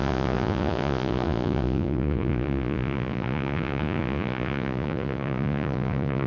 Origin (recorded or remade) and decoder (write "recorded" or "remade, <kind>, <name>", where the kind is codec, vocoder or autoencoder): remade, vocoder, Vocos